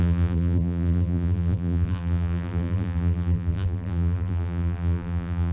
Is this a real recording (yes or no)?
no